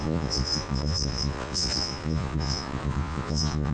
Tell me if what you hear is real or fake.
fake